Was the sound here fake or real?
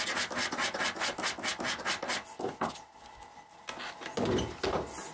real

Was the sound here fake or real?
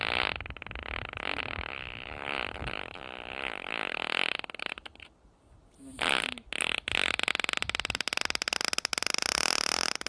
real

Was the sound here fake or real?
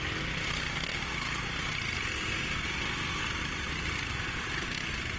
real